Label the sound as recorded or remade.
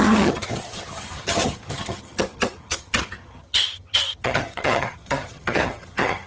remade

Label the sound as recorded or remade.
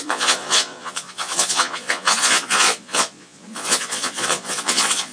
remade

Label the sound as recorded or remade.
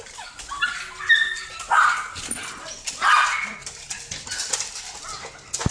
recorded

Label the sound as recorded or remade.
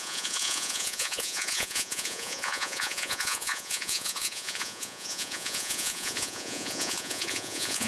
remade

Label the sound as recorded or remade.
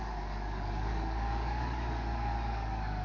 remade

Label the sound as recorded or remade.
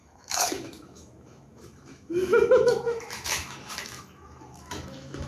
remade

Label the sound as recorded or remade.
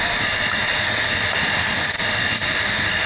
recorded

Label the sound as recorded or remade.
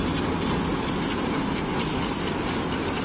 recorded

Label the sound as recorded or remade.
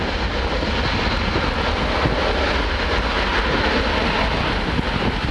recorded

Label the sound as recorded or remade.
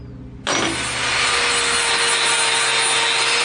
recorded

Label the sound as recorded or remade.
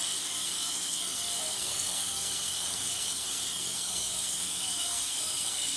remade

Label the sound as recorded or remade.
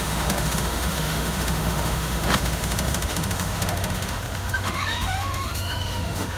remade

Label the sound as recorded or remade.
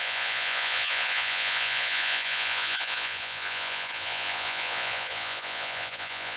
remade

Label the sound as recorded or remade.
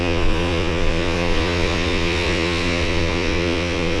remade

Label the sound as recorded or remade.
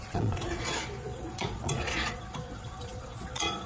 remade